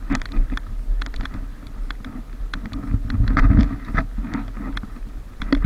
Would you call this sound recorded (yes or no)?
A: yes